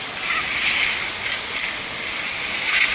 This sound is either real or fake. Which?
real